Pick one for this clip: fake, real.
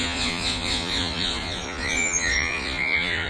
fake